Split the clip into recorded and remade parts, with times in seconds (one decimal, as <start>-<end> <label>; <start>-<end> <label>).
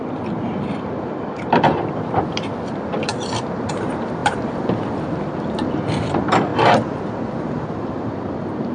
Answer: 0.0-3.1 remade; 3.1-3.7 recorded; 3.7-6.5 remade; 6.5-7.4 recorded; 7.4-8.7 remade